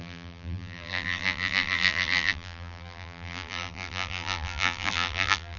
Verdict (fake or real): fake